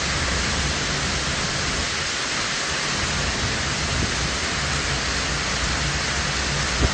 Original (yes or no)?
yes